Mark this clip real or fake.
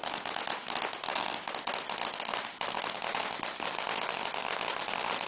real